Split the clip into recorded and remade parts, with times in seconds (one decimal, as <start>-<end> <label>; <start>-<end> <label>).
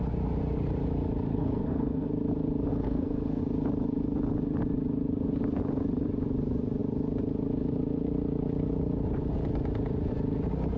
0.0-1.3 recorded; 1.3-2.1 remade; 2.1-2.7 recorded; 2.7-3.4 remade; 3.4-10.8 recorded